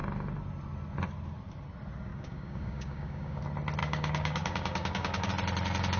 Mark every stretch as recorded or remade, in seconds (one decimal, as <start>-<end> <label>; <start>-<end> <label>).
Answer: 0.0-2.1 recorded; 2.1-3.4 remade; 3.4-3.8 recorded; 3.8-5.3 remade; 5.3-6.0 recorded